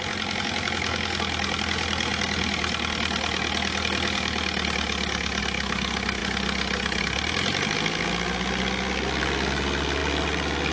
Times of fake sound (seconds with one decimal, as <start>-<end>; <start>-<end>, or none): none

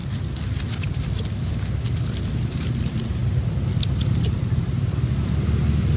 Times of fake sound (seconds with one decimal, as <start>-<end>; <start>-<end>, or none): none

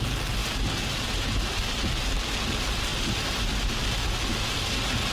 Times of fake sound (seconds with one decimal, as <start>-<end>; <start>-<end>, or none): 0.4-1.6

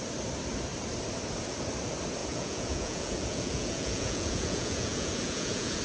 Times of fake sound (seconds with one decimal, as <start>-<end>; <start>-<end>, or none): 2.2-5.8

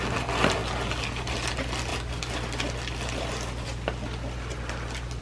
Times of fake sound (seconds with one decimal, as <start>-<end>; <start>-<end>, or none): 1.9-5.2

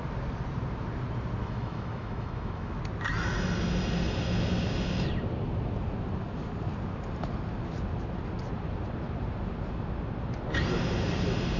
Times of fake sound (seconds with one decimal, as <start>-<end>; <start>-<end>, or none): 1.4-2.8

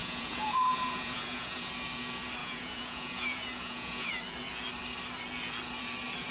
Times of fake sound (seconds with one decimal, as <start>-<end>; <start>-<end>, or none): 0.0-1.7; 2.4-4.1

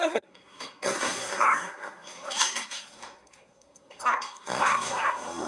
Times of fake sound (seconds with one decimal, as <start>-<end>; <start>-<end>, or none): 0.0-5.5